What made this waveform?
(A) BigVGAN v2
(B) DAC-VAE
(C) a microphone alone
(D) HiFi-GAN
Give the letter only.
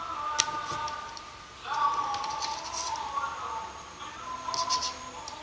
C